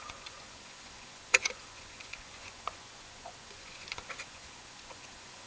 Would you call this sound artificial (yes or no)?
yes